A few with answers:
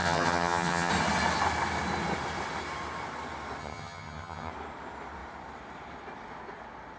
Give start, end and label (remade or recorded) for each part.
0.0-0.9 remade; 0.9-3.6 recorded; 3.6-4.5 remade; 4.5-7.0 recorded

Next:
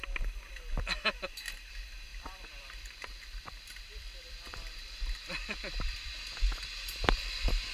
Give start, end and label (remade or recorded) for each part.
0.0-2.1 recorded; 2.1-6.7 remade; 6.7-7.7 recorded